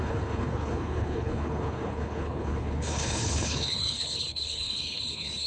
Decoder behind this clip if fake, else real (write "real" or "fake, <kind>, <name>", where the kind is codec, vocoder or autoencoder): fake, codec, HILCodec